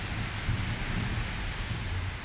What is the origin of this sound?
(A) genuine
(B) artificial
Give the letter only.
A